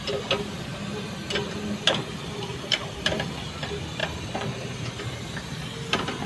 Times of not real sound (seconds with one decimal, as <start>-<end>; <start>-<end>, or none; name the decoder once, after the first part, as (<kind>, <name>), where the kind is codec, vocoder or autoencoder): 0.0-0.7 (vocoder, BigVGAN v2); 2.1-4.0; 5.0-6.3